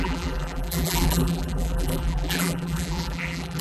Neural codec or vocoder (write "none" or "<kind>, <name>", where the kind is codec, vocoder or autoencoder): vocoder, BigVGAN v2